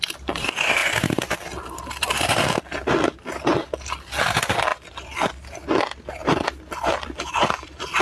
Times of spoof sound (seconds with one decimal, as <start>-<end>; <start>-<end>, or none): 4.7-5.3; 6.2-8.0